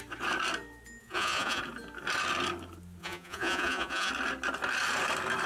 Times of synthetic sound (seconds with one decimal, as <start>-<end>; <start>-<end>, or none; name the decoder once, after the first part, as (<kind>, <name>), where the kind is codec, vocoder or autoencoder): 1.0-1.6 (vocoder, Vocos); 3.0-4.1